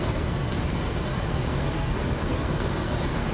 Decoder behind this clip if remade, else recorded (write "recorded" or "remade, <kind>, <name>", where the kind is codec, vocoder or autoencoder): remade, codec, SNAC